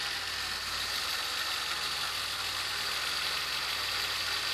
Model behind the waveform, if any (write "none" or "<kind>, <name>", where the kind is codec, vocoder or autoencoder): none